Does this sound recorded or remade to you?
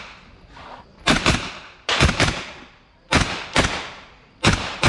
recorded